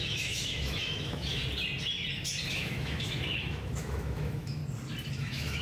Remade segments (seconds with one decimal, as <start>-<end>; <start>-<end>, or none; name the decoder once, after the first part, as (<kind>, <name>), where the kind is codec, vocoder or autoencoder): 0.0-1.4 (autoencoder, DAC-VAE); 2.5-4.6; 5.1-5.6